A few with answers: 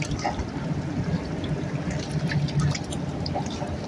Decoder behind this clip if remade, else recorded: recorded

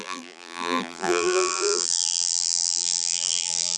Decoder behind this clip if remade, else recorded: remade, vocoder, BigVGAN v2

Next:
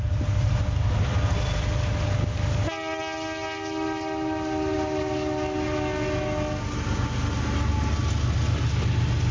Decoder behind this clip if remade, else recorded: recorded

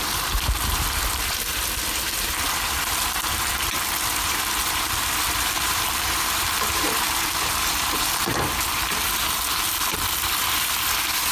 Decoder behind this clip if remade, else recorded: remade, vocoder, BigVGAN v2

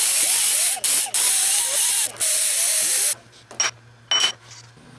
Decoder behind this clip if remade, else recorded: recorded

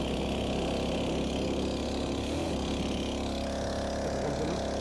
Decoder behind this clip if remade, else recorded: recorded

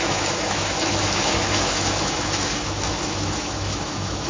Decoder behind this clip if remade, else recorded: remade, autoencoder, DAC-VAE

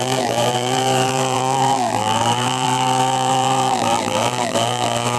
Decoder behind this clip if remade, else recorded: remade, vocoder, BigVGAN v2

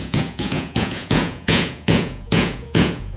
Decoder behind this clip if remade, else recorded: remade, vocoder, Vocos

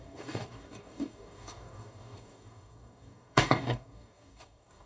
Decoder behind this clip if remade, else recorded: remade, codec, DAC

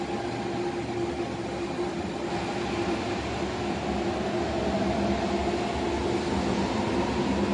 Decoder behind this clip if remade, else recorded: recorded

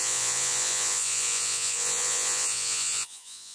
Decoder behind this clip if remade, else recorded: remade, vocoder, Vocos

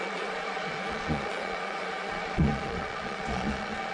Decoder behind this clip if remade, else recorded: remade, vocoder, Vocos